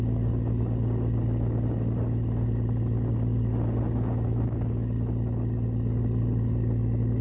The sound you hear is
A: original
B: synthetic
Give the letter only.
A